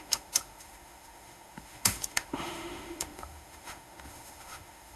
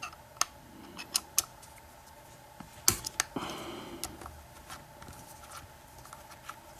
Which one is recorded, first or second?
second